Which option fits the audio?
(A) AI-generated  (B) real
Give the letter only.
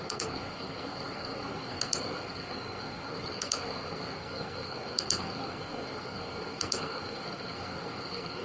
A